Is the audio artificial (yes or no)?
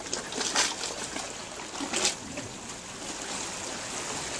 no